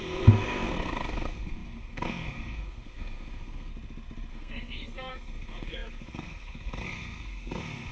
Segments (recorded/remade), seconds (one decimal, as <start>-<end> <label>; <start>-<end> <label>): 0.0-3.7 remade; 3.7-4.3 recorded; 4.3-7.9 remade